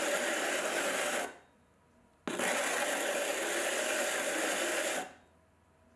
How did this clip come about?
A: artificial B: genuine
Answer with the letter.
B